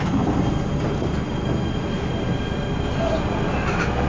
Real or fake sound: real